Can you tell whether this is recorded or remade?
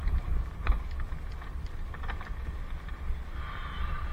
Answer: recorded